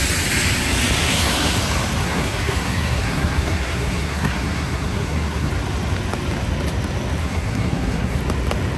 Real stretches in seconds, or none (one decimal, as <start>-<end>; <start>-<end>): 0.0-1.0; 1.6-2.0; 5.5-7.2; 8.2-8.8